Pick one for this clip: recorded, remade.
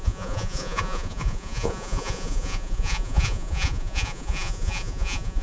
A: remade